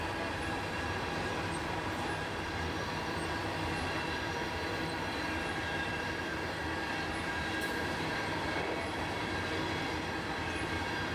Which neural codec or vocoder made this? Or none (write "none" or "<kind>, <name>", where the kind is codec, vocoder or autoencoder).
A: vocoder, BigVGAN v2